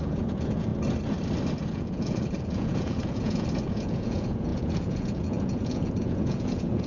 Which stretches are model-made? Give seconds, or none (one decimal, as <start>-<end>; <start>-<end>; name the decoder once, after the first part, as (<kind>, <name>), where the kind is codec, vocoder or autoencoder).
0.0-0.7 (vocoder, Vocos); 1.7-6.9